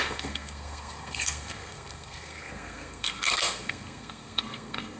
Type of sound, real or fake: fake